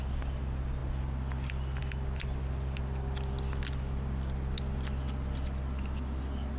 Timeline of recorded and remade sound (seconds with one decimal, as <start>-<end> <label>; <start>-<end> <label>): 0.0-6.6 recorded

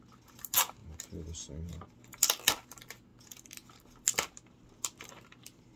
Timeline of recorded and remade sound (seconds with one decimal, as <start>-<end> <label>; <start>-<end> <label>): 0.0-5.8 recorded

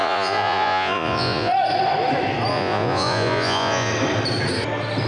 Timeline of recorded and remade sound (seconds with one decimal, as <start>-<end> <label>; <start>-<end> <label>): 0.0-1.5 remade; 1.5-2.5 recorded; 2.5-3.9 remade; 3.9-5.1 recorded

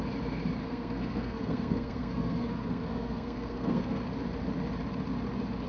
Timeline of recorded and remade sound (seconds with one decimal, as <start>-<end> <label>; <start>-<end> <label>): 0.0-0.6 recorded; 0.6-4.0 remade; 4.0-5.7 recorded

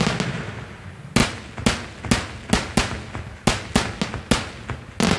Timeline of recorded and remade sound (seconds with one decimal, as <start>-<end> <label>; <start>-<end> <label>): 0.0-5.2 recorded

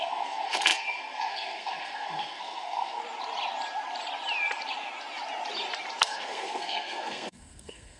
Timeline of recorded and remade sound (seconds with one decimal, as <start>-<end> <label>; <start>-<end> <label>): 0.0-3.0 remade; 3.0-6.0 recorded; 6.0-8.0 remade

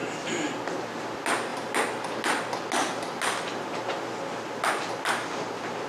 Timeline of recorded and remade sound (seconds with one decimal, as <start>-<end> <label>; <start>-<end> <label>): 0.0-5.9 recorded

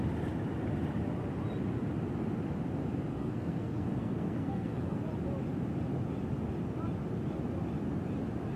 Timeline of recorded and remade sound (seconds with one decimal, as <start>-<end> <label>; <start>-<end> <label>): 0.0-3.1 recorded; 3.1-5.0 remade; 5.0-8.6 recorded